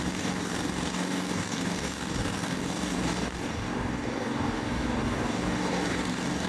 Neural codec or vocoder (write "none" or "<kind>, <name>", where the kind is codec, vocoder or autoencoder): codec, DAC